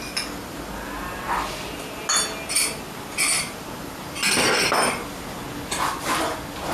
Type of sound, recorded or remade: recorded